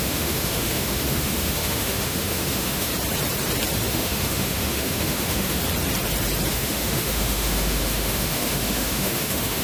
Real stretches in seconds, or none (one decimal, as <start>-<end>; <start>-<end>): 2.9-3.9; 5.6-6.5